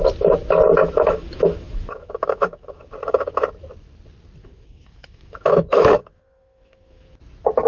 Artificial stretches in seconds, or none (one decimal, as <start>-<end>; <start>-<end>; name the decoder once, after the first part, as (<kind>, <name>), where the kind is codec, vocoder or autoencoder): 0.8-2.9 (autoencoder, DAC-VAE); 4.4-7.2